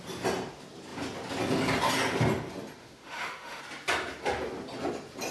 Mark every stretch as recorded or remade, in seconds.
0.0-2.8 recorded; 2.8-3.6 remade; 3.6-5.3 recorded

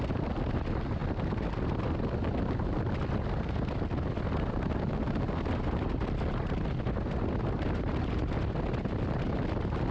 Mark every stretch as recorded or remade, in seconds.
0.0-9.9 recorded

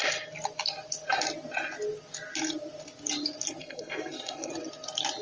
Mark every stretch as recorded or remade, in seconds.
0.0-3.6 recorded; 3.6-4.5 remade; 4.5-5.2 recorded